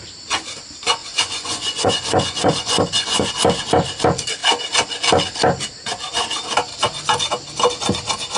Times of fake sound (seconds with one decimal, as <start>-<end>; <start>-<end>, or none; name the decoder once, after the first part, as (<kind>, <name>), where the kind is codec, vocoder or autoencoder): 1.0-3.3 (vocoder, Vocos)